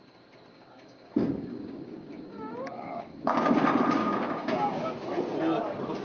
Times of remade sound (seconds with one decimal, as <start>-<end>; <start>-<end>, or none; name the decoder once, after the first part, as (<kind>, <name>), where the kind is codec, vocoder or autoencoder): 0.5-3.4 (codec, DAC); 4.0-4.9